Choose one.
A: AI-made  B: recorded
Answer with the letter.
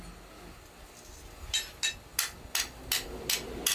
B